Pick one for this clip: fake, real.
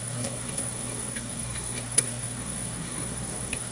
fake